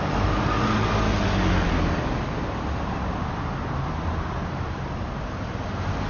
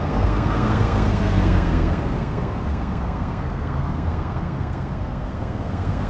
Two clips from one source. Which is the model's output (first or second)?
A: second